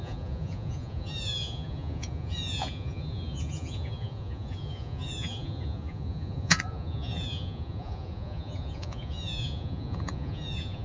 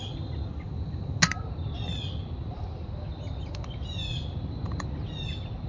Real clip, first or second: second